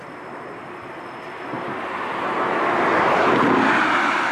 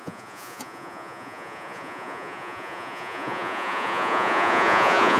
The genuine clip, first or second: first